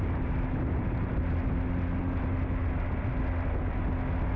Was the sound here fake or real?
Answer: real